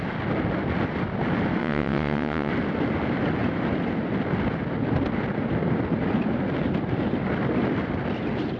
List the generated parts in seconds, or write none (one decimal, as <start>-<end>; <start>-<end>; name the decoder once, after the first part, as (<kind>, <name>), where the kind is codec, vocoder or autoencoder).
1.6-2.5 (vocoder, WaveNeXt)